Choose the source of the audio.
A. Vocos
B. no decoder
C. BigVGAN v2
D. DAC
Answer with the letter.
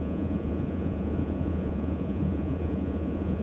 A